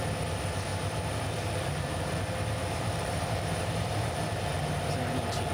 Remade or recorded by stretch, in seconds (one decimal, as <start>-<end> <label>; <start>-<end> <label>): 0.0-0.7 recorded; 0.7-2.2 remade; 2.2-2.6 recorded; 2.6-4.5 remade; 4.5-5.5 recorded